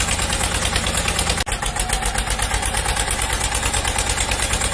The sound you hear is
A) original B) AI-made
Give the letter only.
A